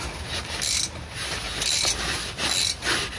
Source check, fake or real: real